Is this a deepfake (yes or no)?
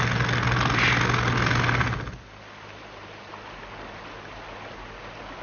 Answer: no